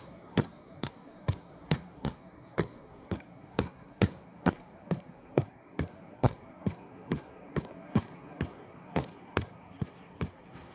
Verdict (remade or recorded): remade